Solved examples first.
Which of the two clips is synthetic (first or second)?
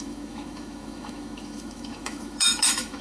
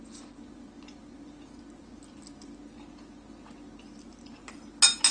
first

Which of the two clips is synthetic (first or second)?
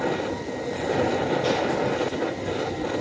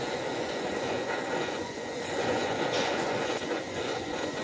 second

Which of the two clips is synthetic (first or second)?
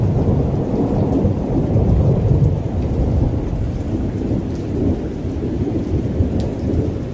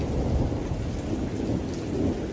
first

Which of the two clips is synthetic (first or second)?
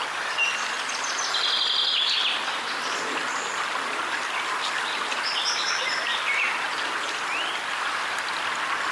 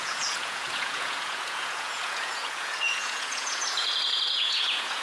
second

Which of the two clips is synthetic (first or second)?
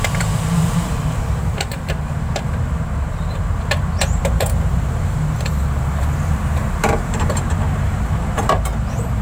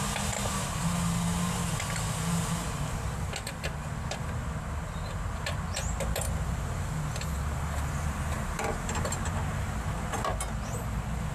first